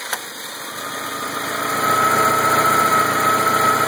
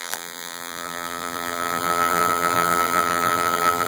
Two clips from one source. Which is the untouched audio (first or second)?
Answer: first